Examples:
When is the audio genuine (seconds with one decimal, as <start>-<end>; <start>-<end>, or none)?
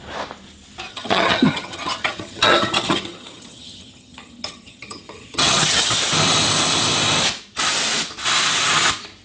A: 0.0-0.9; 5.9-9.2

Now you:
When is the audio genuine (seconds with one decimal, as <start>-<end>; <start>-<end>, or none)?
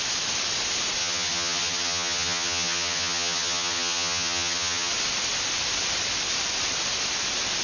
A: 0.0-1.0; 4.9-7.6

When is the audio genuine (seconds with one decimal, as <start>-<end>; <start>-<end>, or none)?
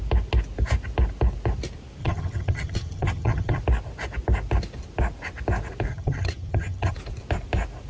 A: 0.0-2.0; 3.6-5.9; 6.9-7.9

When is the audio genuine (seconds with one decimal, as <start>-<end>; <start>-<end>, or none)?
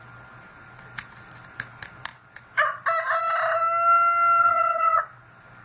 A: 0.0-4.4; 5.0-5.6